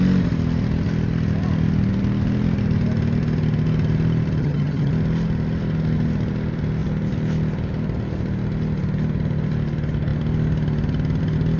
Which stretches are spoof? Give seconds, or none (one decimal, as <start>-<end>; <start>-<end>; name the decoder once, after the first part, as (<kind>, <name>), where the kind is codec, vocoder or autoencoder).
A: 4.4-4.9 (vocoder, HiFi-GAN)